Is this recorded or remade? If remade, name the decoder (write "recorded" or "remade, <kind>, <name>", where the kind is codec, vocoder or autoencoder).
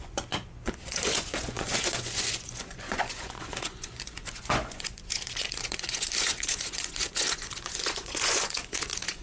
remade, vocoder, Vocos